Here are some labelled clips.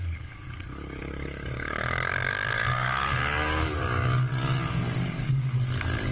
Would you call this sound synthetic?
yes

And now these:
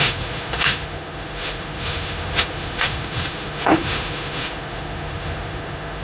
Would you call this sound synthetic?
yes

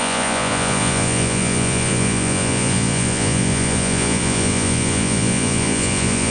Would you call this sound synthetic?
yes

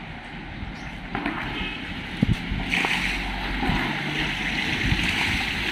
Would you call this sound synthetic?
no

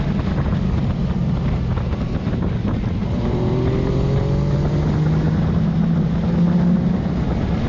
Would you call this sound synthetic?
no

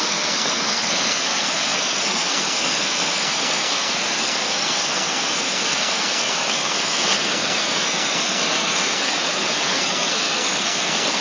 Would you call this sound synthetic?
yes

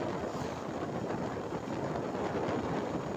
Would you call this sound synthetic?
no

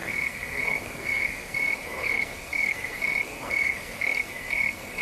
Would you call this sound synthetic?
yes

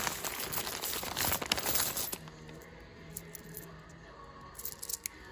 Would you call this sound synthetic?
no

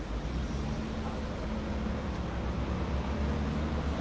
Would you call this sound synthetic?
no